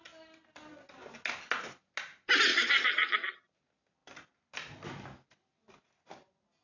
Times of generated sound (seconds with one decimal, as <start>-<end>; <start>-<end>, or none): 2.5-3.3